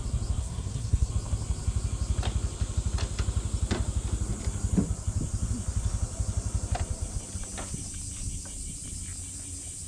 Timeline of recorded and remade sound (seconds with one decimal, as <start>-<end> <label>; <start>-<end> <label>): 0.0-0.4 recorded; 0.4-1.1 remade; 1.1-9.9 recorded